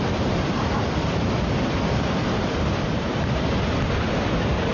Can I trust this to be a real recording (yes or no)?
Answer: yes